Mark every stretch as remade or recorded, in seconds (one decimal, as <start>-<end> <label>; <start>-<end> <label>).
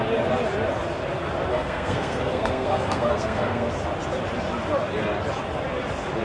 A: 0.0-1.5 recorded; 1.5-3.7 remade; 3.7-6.2 recorded